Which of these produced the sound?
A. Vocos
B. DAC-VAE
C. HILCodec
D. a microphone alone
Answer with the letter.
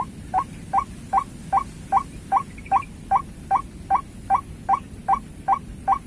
D